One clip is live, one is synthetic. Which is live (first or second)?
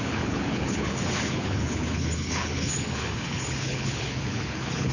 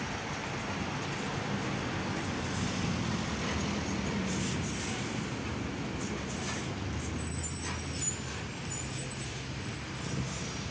second